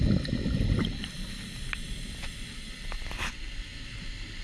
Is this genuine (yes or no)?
yes